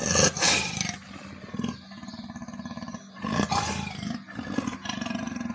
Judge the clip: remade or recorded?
recorded